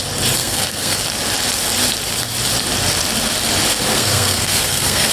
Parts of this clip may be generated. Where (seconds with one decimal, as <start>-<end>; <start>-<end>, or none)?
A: 0.4-1.0; 3.9-5.1